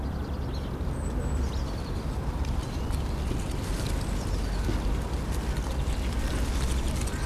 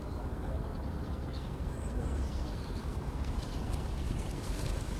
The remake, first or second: second